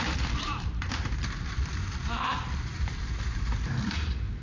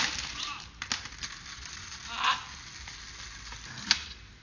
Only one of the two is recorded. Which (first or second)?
second